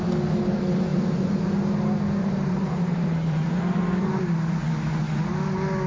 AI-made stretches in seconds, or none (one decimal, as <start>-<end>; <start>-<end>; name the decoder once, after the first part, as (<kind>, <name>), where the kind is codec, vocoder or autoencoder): 0.9-1.4 (vocoder, BigVGAN v2); 2.2-4.4

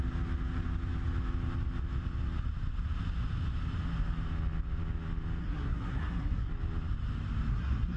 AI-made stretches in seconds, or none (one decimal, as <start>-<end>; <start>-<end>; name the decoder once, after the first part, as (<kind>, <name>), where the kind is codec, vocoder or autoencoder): 5.4-6.5 (codec, SNAC); 7.5-8.0

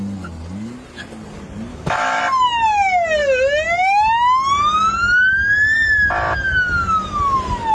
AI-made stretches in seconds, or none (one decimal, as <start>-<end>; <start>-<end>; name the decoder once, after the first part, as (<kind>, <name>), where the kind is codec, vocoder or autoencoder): 1.7-2.2 (autoencoder, DAC-VAE)

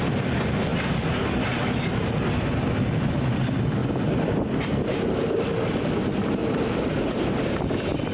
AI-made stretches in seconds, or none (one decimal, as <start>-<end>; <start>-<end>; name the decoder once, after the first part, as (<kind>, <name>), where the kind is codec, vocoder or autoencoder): 6.4-7.5 (vocoder, BigVGAN v2)

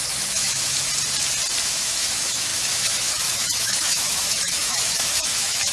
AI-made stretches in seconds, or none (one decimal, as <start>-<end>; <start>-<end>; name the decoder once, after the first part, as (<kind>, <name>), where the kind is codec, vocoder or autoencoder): 0.0-0.9 (autoencoder, DAC-VAE); 1.6-5.7

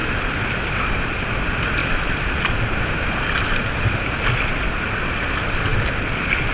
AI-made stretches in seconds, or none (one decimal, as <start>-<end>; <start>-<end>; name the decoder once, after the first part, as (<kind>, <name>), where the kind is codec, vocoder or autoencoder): 0.0-0.8 (vocoder, BigVGAN v2); 1.8-2.4; 5.7-6.5